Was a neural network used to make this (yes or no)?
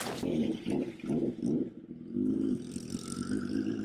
no